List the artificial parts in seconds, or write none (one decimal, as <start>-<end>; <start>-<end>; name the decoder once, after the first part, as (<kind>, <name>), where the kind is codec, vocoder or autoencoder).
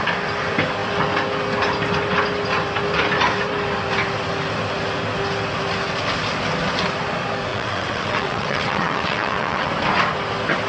7.5-9.7 (vocoder, WaveNeXt)